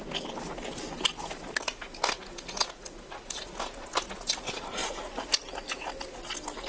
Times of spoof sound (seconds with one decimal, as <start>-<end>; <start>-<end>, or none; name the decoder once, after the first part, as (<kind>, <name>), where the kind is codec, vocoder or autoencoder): 4.8-5.7 (vocoder, BigVGAN v2)